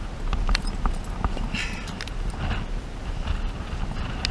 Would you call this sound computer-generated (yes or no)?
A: no